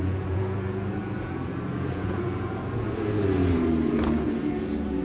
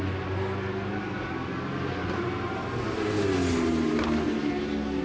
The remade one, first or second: first